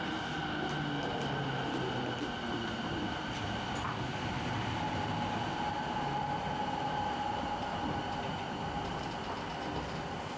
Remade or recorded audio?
recorded